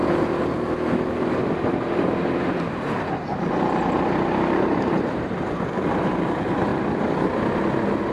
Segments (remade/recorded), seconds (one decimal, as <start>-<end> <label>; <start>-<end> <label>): 0.0-1.3 recorded; 1.3-6.7 remade; 6.7-8.1 recorded